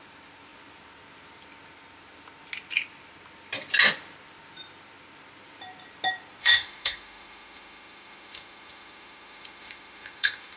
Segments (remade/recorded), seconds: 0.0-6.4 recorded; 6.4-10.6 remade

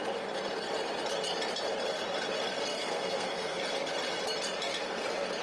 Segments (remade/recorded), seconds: 0.0-2.7 recorded; 2.7-3.6 remade; 3.6-5.4 recorded

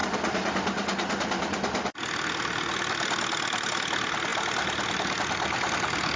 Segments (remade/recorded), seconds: 0.0-6.2 recorded

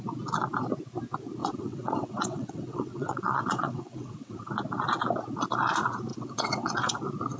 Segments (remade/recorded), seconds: 0.0-1.4 recorded; 1.4-4.5 remade; 4.5-6.1 recorded; 6.1-7.0 remade; 7.0-7.4 recorded